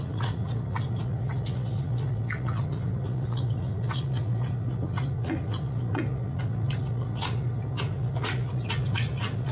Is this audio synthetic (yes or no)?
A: yes